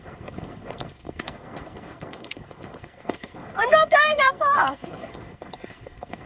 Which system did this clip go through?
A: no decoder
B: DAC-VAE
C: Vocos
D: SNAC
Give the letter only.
D